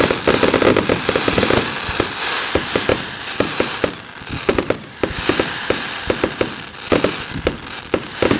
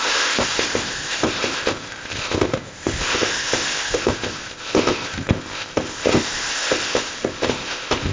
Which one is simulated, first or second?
second